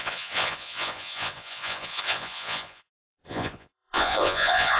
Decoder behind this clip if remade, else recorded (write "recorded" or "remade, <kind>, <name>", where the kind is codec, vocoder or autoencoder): remade, vocoder, Vocos